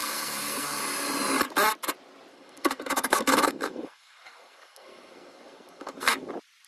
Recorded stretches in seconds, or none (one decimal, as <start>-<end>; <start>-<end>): 0.8-2.3; 6.3-6.7